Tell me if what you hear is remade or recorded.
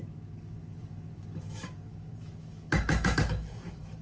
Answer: remade